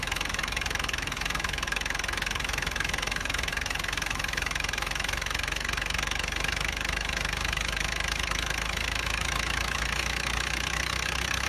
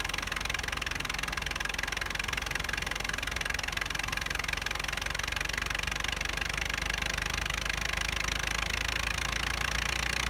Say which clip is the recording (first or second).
second